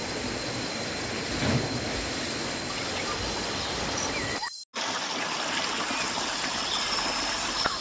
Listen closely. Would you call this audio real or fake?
real